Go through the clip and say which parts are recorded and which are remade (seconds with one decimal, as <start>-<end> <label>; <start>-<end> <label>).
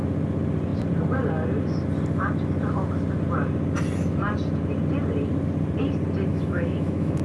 0.0-6.3 recorded; 6.3-7.2 remade